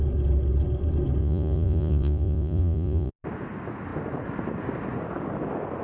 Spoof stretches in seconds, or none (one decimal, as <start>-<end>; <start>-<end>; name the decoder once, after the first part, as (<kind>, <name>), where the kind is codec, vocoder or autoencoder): 1.2-3.1 (vocoder, Vocos)